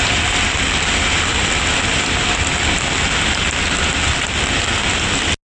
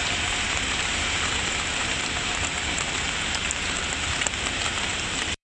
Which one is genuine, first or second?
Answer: first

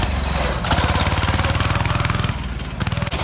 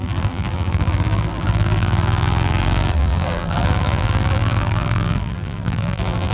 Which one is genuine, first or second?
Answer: first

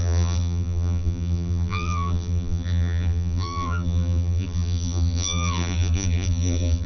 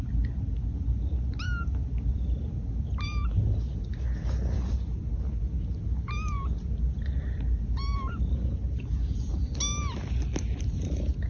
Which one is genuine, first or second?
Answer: second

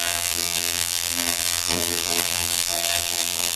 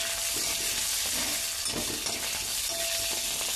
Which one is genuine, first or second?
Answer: second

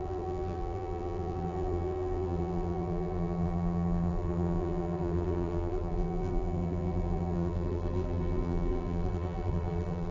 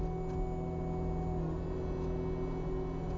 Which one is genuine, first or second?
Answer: second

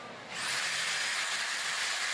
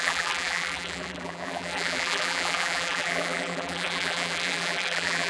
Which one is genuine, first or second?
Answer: first